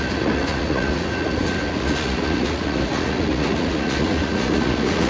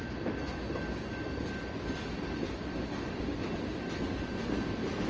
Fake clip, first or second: first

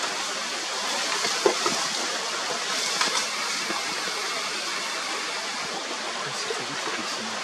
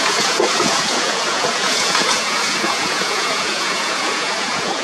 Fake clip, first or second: second